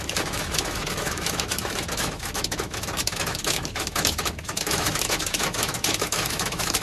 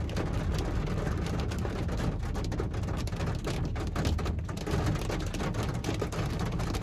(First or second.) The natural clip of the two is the second